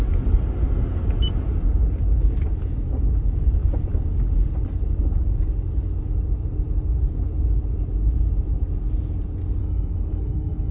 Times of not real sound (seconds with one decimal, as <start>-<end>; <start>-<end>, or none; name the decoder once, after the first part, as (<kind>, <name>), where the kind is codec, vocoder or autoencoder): 9.6-10.7 (codec, SNAC)